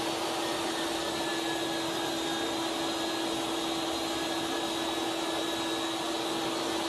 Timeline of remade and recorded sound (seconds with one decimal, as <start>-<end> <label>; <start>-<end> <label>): 0.0-6.9 recorded